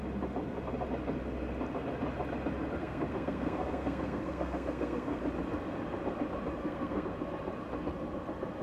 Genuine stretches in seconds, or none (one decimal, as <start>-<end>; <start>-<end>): 0.0-2.8; 5.2-6.6; 7.2-8.6